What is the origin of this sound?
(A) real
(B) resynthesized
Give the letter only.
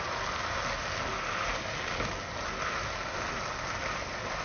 A